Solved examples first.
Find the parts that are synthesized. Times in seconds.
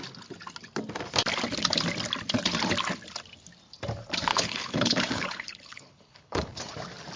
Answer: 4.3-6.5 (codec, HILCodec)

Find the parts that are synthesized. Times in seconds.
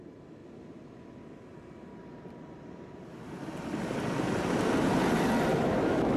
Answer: 5.5-6.2 (autoencoder, DAC-VAE)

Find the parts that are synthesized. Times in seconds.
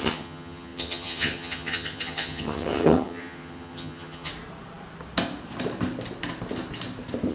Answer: 0.0-4.3 (vocoder, HiFi-GAN)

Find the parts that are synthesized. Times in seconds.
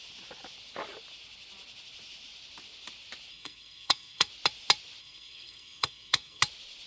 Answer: 3.3-4.3 (codec, SNAC); 5.0-6.4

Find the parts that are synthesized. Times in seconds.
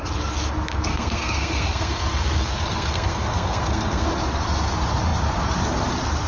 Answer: 0.9-4.1 (codec, SNAC)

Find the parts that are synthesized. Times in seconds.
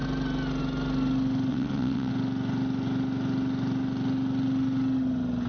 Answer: 1.5-2.1 (vocoder, WaveNeXt)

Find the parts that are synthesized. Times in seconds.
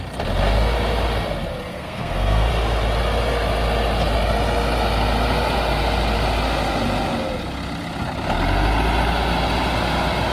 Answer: 1.7-2.5 (codec, SNAC)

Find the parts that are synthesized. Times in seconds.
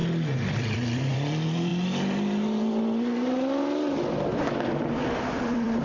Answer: 0.0-1.7 (vocoder, BigVGAN v2); 5.2-5.8